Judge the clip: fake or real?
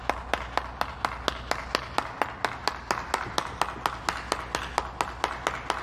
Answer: real